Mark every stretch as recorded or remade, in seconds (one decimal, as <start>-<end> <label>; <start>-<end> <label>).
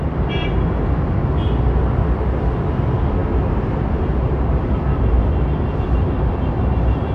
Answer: 0.0-7.1 recorded